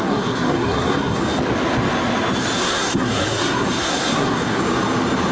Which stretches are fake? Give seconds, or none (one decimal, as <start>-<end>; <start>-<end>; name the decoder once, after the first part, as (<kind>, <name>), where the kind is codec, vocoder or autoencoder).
0.0-1.2 (codec, SNAC); 2.6-4.6